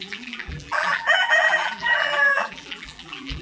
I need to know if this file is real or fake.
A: fake